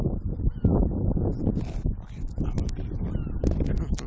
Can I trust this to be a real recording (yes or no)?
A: yes